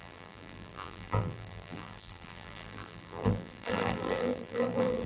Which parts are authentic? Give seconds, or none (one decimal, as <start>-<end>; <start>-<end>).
none